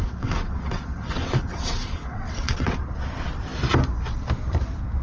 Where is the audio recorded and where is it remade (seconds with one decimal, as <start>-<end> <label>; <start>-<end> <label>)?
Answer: 0.0-2.8 remade; 2.8-5.0 recorded